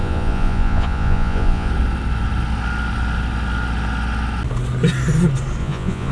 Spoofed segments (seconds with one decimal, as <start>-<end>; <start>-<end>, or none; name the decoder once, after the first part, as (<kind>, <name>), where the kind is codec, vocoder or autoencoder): 0.0-1.7 (vocoder, Vocos); 5.6-6.1